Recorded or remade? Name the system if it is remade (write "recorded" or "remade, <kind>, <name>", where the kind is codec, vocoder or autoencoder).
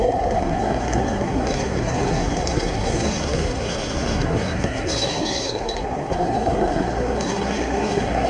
remade, codec, SNAC